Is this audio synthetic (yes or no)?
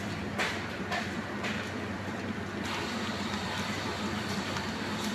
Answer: yes